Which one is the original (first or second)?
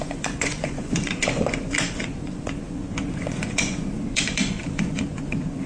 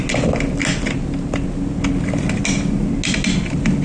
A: second